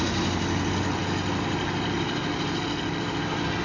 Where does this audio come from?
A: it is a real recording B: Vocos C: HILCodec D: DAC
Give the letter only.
A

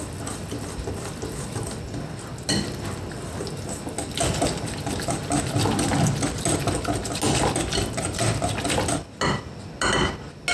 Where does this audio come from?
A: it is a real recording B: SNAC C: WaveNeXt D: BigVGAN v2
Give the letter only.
A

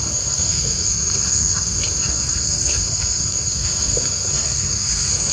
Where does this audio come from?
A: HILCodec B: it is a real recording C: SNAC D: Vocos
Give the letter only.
C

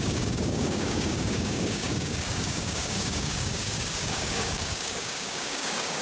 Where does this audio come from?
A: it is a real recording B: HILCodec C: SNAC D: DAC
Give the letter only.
D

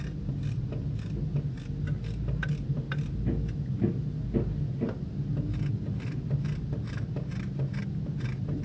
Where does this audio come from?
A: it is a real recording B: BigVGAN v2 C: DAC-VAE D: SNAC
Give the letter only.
A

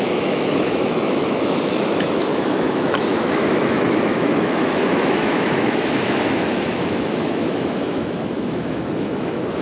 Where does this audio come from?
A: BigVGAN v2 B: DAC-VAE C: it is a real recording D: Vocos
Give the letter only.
B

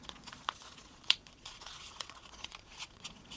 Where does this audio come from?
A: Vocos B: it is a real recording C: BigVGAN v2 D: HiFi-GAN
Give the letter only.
A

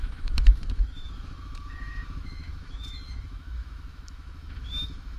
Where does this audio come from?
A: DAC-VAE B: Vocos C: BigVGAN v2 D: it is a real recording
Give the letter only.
A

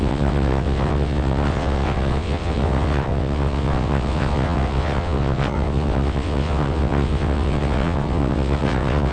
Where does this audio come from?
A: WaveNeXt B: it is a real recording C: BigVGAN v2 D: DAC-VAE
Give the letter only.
A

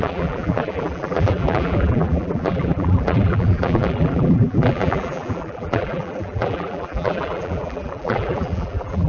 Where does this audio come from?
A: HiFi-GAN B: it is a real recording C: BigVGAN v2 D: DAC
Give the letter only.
C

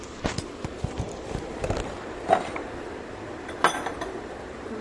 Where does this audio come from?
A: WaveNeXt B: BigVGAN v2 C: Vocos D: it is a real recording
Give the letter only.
B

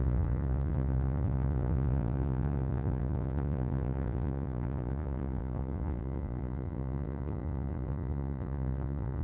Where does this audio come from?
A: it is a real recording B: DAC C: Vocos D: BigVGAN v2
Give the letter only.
C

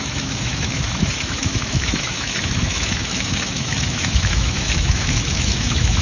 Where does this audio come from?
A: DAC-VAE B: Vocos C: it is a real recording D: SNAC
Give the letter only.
A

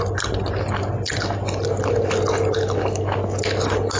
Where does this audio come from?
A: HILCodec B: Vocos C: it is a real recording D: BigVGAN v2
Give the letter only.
C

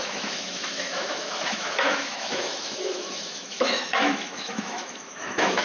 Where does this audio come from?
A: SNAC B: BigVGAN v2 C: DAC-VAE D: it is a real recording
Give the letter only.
C